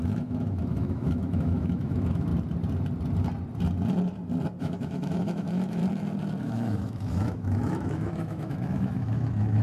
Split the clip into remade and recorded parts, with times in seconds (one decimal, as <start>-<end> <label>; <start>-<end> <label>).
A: 0.0-2.3 remade; 2.3-4.6 recorded; 4.6-5.8 remade; 5.8-6.4 recorded; 6.4-9.6 remade